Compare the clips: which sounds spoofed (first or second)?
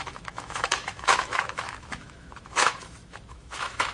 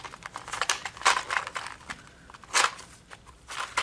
first